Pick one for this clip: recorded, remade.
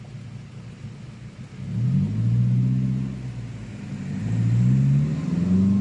recorded